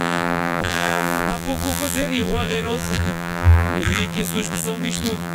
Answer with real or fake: fake